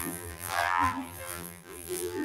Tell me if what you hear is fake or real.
fake